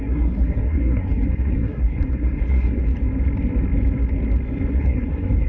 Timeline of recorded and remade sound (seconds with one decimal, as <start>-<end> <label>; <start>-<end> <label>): 0.0-2.8 remade; 2.8-4.7 recorded; 4.7-5.5 remade

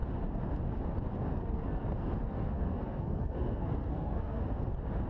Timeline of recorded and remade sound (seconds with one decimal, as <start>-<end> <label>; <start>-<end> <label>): 0.0-1.3 recorded; 1.3-4.4 remade; 4.4-5.1 recorded

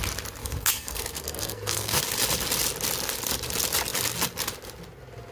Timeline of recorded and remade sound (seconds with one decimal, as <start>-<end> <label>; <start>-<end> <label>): 0.0-0.4 recorded; 0.4-2.0 remade; 2.0-5.3 recorded